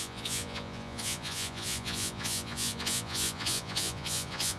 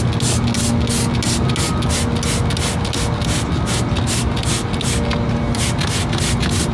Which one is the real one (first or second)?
second